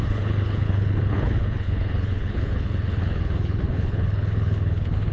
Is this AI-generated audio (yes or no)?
yes